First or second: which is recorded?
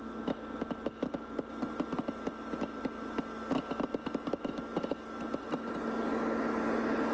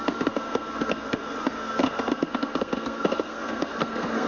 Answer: first